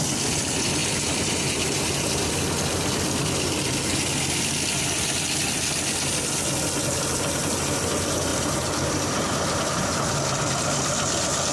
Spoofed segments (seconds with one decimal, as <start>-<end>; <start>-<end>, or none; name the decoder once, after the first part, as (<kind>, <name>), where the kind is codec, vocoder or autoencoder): 0.8-2.3 (vocoder, BigVGAN v2); 8.3-10.1